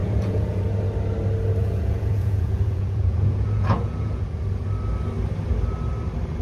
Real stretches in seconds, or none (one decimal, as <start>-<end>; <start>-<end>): 0.6-1.6; 4.4-6.4